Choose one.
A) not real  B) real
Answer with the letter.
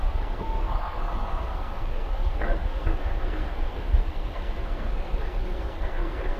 A